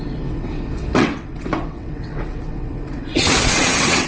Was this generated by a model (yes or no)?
yes